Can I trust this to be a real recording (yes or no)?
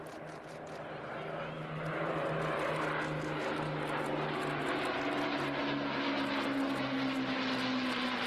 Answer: yes